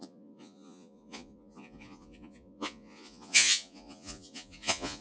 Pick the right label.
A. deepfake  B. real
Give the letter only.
A